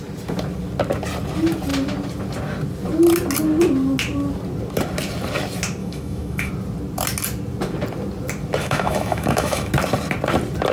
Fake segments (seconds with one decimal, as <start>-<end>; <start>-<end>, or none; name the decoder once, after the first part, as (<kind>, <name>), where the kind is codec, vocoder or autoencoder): 5.8-6.5 (autoencoder, DAC-VAE); 8.6-9.7